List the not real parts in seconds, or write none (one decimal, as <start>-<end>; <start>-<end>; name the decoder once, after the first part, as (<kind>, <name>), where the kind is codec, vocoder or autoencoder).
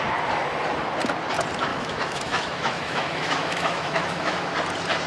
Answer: 1.7-4.5 (autoencoder, DAC-VAE)